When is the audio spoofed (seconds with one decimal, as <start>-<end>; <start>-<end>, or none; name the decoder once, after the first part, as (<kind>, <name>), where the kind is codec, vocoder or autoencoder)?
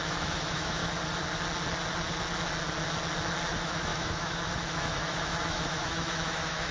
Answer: 0.0-0.8 (autoencoder, DAC-VAE); 3.5-6.7